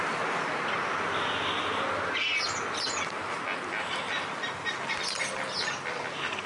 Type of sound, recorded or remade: recorded